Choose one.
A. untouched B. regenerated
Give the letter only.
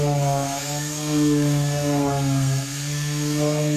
B